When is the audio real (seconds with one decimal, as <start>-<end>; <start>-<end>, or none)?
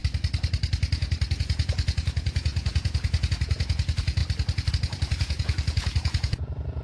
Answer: 0.0-1.4; 4.2-4.7